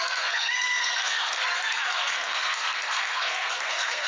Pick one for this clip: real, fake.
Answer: fake